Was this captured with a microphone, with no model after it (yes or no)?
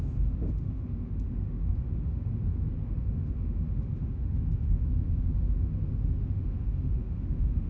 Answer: no